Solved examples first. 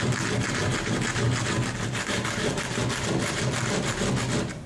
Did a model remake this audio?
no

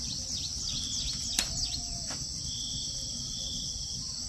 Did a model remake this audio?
no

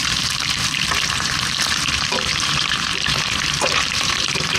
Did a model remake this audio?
yes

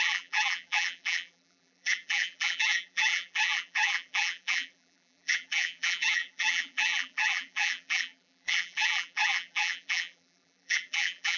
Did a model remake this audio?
yes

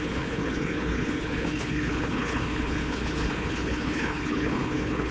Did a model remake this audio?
yes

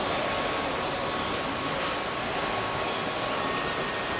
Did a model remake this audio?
no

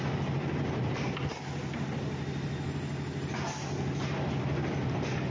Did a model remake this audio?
no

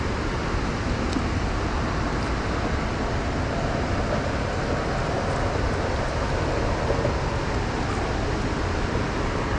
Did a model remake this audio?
no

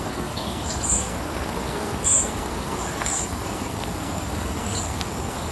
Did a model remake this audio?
yes